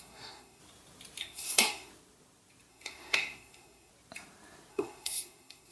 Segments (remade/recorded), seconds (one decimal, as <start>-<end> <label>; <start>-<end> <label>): 0.0-0.6 remade; 0.6-1.2 recorded; 1.2-1.9 remade; 1.9-2.7 recorded; 2.7-3.9 remade; 3.9-4.7 recorded; 4.7-5.7 remade